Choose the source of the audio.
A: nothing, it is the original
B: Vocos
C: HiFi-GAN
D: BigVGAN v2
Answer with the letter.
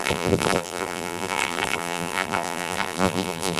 D